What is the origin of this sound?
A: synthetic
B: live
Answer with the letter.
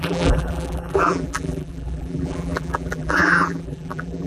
A